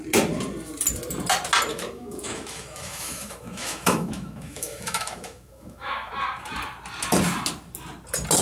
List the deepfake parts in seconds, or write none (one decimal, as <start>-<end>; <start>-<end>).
1.7-6.1